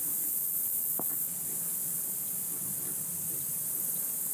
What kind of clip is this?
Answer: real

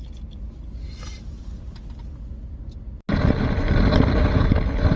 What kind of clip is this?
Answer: real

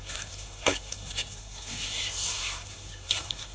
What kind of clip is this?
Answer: fake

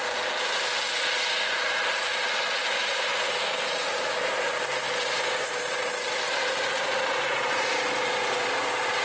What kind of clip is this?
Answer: real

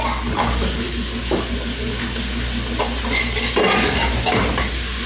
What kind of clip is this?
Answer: real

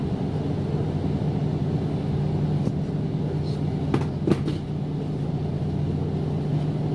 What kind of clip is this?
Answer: real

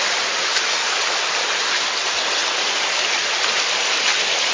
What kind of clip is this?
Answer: real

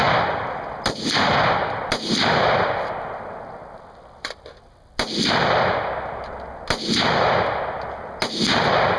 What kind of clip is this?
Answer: real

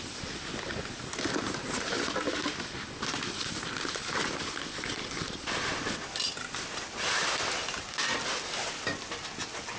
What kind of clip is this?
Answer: real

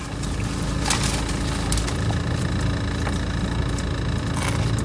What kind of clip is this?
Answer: real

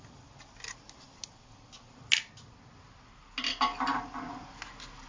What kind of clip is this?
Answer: real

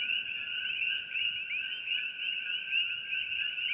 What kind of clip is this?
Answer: real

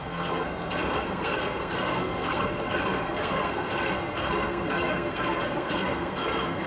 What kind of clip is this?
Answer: fake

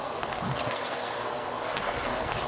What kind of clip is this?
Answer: fake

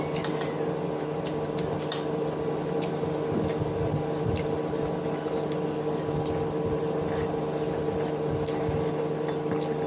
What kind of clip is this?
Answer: real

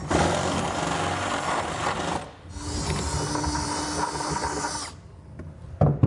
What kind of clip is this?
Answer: real